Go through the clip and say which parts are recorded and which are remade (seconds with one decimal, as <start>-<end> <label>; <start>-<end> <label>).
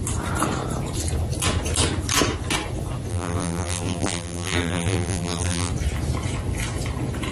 0.0-3.1 recorded; 3.1-5.7 remade; 5.7-7.3 recorded